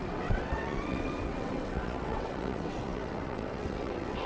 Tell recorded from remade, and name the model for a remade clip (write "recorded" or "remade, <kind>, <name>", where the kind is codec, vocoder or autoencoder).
remade, vocoder, WaveNeXt